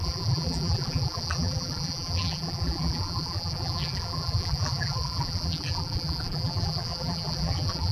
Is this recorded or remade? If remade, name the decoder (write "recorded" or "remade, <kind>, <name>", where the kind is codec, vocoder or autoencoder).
remade, vocoder, BigVGAN v2